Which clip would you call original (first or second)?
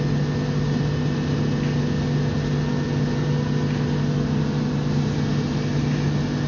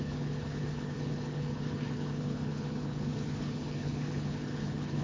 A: first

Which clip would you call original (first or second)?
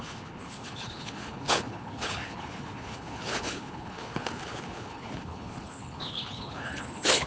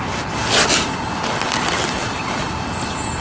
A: second